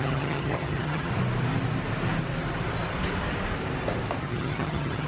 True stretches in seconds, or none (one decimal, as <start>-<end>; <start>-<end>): 1.1-4.2